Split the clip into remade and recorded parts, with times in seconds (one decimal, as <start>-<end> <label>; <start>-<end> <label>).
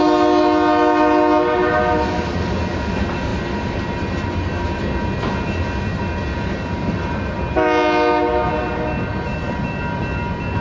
0.0-9.1 recorded; 9.1-9.8 remade; 9.8-10.6 recorded